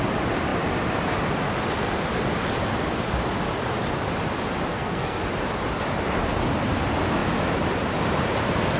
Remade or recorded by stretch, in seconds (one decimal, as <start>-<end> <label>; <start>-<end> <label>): 0.0-4.7 recorded; 4.7-5.2 remade; 5.2-8.8 recorded